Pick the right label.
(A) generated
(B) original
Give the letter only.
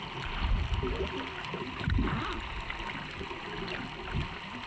B